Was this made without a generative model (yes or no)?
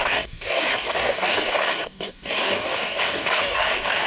no